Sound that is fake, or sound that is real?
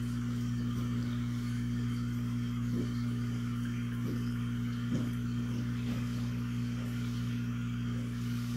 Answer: fake